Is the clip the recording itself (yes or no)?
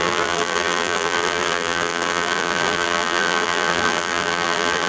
no